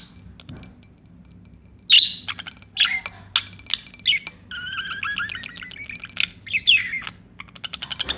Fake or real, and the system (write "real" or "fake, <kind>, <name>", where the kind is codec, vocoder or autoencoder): real